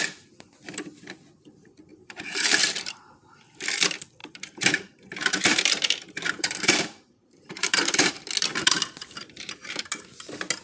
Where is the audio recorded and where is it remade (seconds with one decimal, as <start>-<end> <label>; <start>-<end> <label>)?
0.0-1.9 recorded; 1.9-3.0 remade; 3.0-4.2 recorded; 4.2-8.1 remade; 8.1-8.5 recorded; 8.5-9.8 remade; 9.8-10.6 recorded